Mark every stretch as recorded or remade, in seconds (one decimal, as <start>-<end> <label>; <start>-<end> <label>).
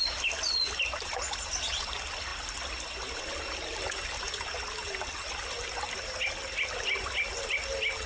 0.0-8.1 recorded